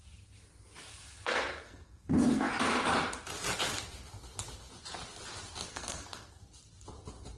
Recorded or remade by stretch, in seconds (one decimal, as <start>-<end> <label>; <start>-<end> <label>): 0.0-0.9 recorded; 0.9-2.5 remade; 2.5-5.7 recorded; 5.7-6.4 remade; 6.4-7.4 recorded